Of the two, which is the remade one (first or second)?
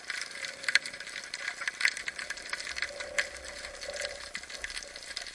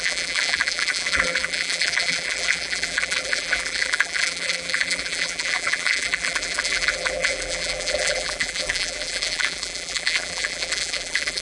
second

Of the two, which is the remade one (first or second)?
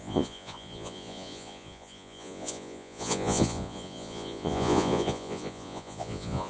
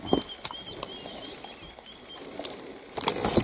first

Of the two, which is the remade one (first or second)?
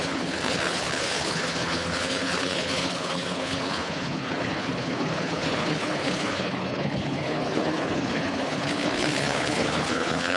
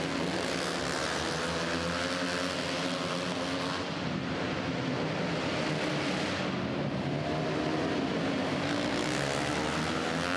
first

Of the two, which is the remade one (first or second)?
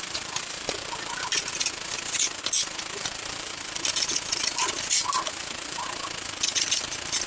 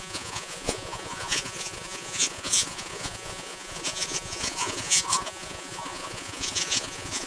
second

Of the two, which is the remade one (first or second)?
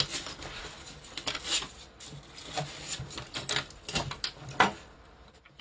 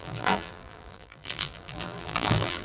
second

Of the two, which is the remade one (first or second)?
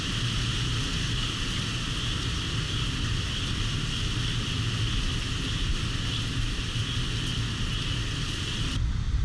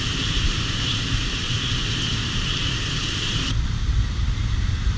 second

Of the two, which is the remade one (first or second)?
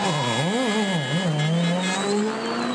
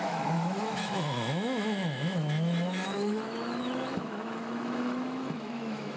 second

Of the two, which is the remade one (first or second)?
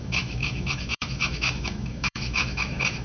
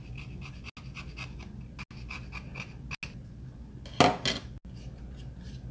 first